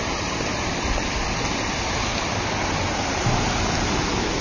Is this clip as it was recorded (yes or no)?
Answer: yes